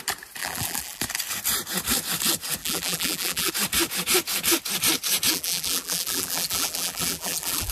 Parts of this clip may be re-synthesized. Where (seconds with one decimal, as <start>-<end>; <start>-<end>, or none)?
0.4-1.0; 2.6-3.5; 5.3-7.7